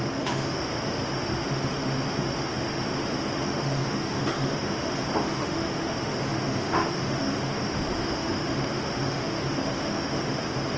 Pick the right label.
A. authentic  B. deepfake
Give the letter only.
B